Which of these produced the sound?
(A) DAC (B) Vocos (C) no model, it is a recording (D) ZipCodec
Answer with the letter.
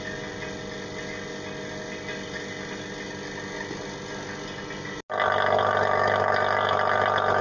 C